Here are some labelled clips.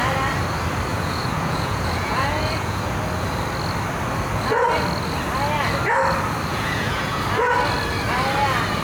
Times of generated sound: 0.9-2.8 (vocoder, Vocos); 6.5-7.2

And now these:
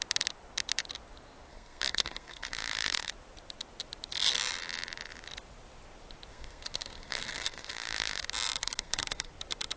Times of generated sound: 1.5-3.1 (codec, SNAC); 6.3-8.2; 8.6-9.3

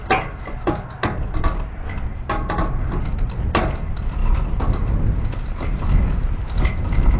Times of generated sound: 4.2-6.0 (vocoder, BigVGAN v2)

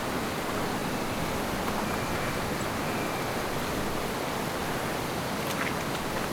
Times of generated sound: none

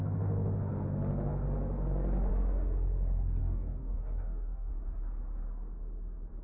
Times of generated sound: 3.4-4.7 (codec, DAC)